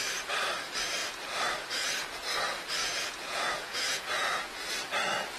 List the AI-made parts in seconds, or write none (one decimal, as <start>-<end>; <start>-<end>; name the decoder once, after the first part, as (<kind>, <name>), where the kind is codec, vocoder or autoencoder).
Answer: 2.8-4.7 (vocoder, Vocos)